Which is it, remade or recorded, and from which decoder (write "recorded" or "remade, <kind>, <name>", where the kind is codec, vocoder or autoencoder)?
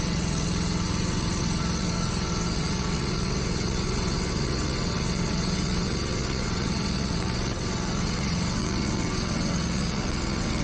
remade, vocoder, WaveNeXt